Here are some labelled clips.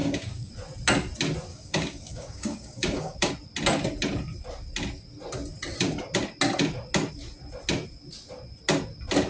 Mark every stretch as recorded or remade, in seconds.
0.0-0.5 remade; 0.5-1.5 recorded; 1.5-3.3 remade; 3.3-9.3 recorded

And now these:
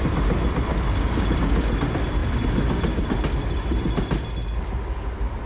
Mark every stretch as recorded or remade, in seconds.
0.0-0.7 recorded; 0.7-1.7 remade; 1.7-5.5 recorded

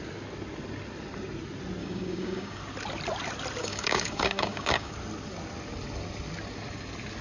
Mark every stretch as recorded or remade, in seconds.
0.0-1.8 recorded; 1.8-2.6 remade; 2.6-3.6 recorded; 3.6-4.9 remade; 4.9-7.2 recorded

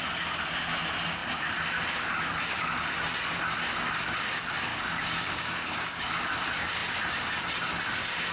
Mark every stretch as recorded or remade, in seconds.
0.0-4.7 recorded; 4.7-6.1 remade; 6.1-8.3 recorded